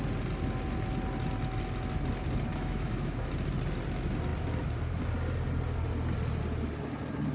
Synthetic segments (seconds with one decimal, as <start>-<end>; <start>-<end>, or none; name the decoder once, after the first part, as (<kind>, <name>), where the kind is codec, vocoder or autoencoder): 2.5-3.3 (autoencoder, DAC-VAE)